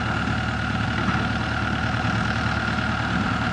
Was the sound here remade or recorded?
remade